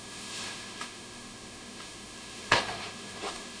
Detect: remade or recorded remade